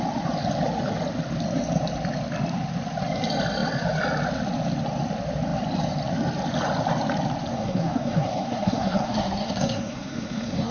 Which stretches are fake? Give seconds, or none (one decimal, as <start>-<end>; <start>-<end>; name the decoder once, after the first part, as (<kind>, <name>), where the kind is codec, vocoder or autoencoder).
7.5-10.7 (codec, SNAC)